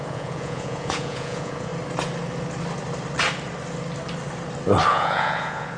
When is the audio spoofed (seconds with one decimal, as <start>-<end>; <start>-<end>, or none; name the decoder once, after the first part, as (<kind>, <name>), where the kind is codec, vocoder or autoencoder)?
0.0-1.7 (vocoder, Vocos); 4.9-5.8